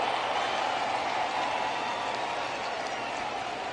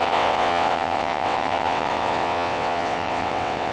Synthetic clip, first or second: second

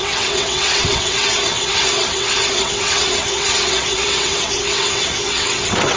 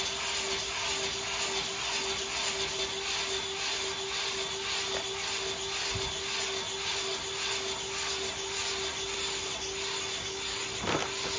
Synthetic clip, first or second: first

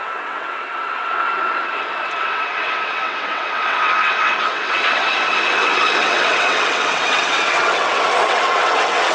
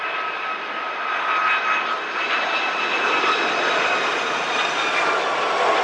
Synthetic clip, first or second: first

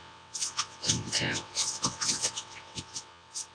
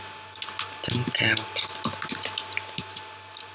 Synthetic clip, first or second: first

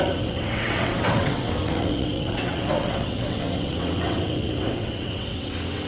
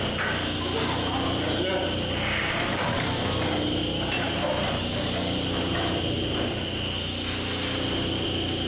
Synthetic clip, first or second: first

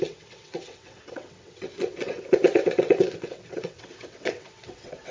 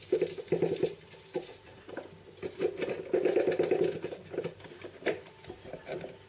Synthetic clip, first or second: first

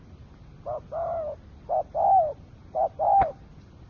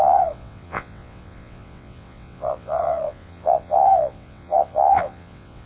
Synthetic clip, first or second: second